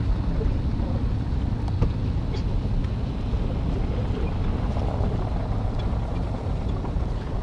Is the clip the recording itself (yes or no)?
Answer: yes